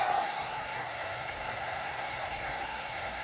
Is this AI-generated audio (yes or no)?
yes